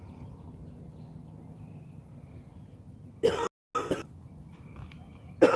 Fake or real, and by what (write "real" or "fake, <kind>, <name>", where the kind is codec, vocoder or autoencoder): real